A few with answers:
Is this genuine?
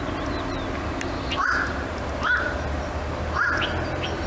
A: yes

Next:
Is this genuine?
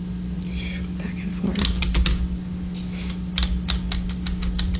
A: yes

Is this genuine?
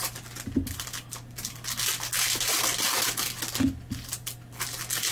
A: yes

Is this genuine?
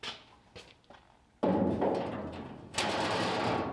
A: yes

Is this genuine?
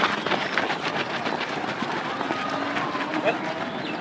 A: yes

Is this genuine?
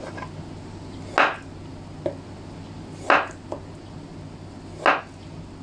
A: yes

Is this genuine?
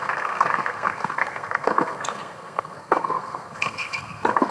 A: no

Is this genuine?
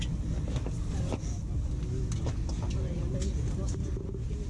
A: yes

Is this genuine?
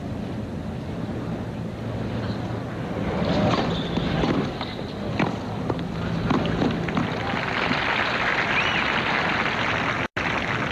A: yes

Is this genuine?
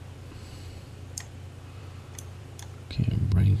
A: no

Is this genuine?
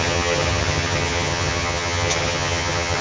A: no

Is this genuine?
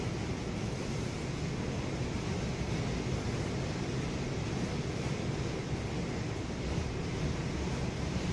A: yes